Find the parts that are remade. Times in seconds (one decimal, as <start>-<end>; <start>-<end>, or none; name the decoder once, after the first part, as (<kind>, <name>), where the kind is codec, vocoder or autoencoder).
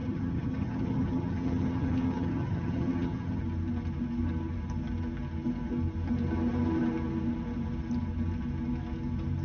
0.0-3.4 (vocoder, HiFi-GAN)